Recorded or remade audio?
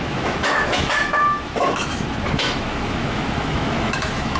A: remade